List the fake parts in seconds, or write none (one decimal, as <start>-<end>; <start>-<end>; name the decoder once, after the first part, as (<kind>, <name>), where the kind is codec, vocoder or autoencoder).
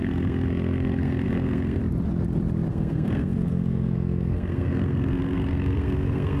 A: 0.0-1.8 (codec, SNAC); 2.7-6.4